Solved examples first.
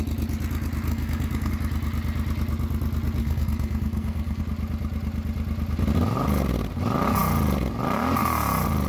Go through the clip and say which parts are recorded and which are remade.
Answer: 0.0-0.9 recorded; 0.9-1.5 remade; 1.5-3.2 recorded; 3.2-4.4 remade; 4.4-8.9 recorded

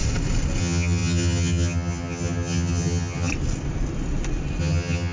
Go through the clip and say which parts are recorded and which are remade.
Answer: 0.0-0.6 recorded; 0.6-3.3 remade; 3.3-4.6 recorded; 4.6-5.1 remade

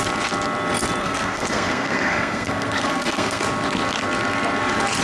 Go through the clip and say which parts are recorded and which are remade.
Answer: 0.0-1.0 recorded; 1.0-3.4 remade; 3.4-5.0 recorded

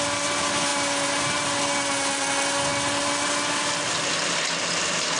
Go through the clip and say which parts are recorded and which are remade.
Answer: 0.0-5.2 recorded

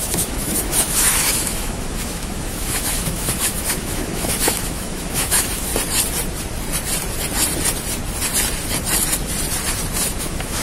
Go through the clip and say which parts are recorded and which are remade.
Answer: 0.0-5.7 remade; 5.7-10.2 recorded; 10.2-10.6 remade

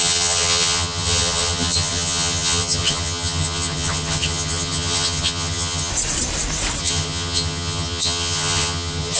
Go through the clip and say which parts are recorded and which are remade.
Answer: 0.0-5.9 remade; 5.9-6.8 recorded; 6.8-9.2 remade

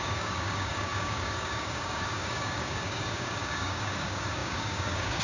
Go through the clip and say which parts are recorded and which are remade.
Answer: 0.0-5.2 remade